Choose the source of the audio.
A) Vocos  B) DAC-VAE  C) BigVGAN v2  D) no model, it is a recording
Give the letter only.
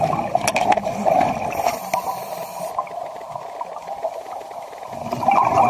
D